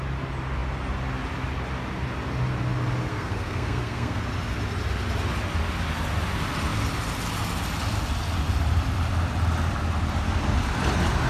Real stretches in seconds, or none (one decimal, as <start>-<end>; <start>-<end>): 0.0-3.1; 4.2-11.3